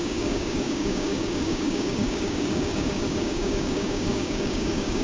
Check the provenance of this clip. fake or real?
fake